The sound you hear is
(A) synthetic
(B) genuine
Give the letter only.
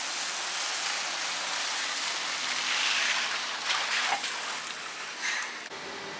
B